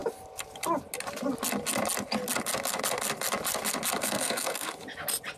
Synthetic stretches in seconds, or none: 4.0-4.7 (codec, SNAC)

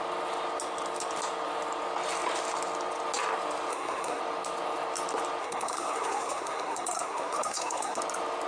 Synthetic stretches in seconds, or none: 3.7-4.2 (codec, SNAC); 5.4-8.0